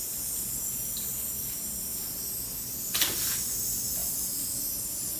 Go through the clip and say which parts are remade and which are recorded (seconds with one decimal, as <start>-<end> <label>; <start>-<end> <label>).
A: 0.0-5.2 recorded